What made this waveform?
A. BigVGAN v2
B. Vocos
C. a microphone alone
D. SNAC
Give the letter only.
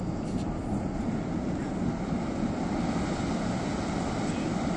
C